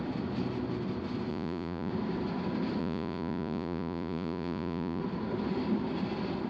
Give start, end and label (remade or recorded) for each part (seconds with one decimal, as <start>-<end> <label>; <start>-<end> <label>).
0.0-1.3 recorded; 1.3-1.9 remade; 1.9-2.8 recorded; 2.8-5.0 remade; 5.0-6.5 recorded